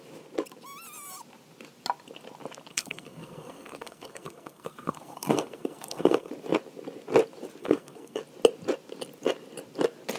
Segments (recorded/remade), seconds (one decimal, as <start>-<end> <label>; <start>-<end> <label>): 0.0-2.7 recorded; 2.7-6.3 remade; 6.3-7.6 recorded; 7.6-8.2 remade; 8.2-10.2 recorded